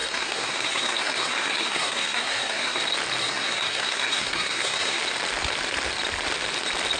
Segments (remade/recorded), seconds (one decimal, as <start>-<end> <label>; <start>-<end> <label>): 0.0-2.8 remade; 2.8-3.2 recorded; 3.2-5.0 remade; 5.0-7.0 recorded